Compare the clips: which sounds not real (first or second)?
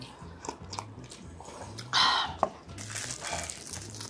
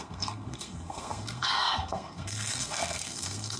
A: second